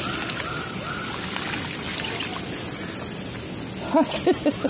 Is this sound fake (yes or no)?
no